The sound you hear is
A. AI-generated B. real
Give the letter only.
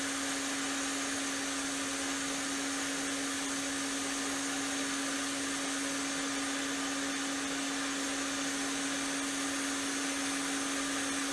B